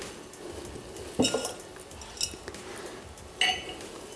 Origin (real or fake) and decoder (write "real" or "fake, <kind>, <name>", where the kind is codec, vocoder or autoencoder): real